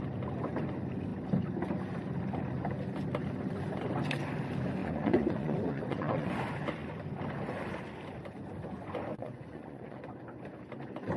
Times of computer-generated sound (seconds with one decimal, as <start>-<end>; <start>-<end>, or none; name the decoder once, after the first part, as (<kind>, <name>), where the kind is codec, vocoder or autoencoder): 4.8-6.3 (vocoder, Vocos); 9.1-10.0